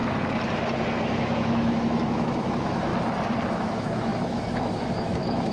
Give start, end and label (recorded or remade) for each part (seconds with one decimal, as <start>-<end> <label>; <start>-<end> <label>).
0.0-1.0 recorded; 1.0-2.9 remade; 2.9-3.5 recorded; 3.5-5.5 remade